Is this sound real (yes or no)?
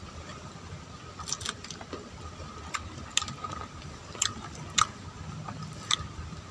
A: yes